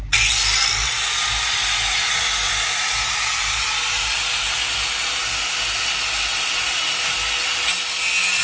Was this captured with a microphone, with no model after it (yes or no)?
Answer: yes